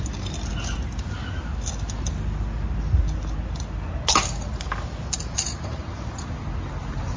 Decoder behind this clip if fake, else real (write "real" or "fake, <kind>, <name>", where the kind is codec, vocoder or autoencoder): real